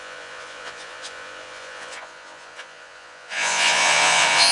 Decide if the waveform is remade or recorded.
remade